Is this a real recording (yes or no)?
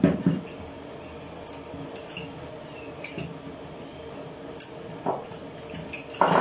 yes